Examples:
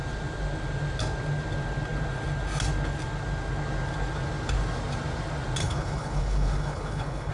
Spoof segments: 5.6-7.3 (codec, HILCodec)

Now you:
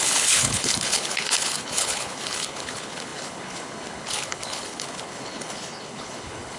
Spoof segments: 0.0-6.6 (codec, HILCodec)

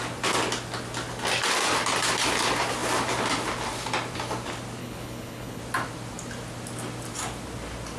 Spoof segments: 4.8-5.6 (codec, HILCodec)

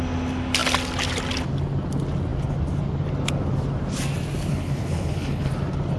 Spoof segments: 4.5-5.5 (codec, HILCodec)

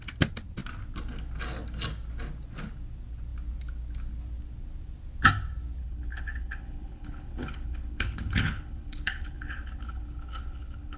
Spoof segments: 5.8-11.0 (codec, HILCodec)

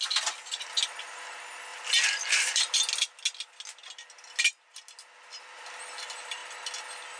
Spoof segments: none

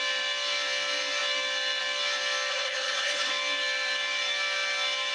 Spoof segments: 2.5-3.3 (codec, HILCodec)

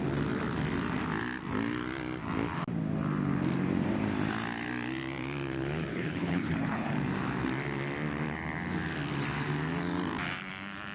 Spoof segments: 5.9-6.9 (codec, HILCodec)